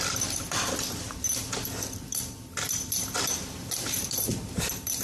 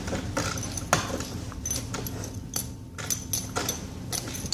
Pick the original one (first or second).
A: second